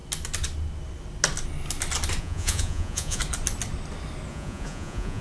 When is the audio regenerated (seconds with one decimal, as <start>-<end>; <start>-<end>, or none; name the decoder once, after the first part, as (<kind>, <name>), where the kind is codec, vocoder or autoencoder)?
2.2-3.2 (vocoder, Vocos); 4.3-5.2